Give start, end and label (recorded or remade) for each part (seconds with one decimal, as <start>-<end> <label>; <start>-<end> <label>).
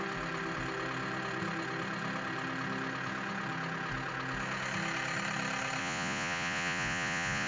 0.0-5.8 recorded; 5.8-7.5 remade